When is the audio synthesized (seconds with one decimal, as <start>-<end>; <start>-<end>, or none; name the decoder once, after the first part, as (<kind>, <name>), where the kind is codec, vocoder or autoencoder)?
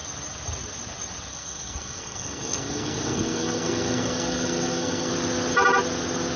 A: 1.3-5.1 (codec, SNAC)